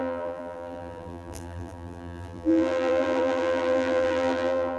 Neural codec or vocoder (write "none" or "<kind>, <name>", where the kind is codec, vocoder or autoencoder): vocoder, BigVGAN v2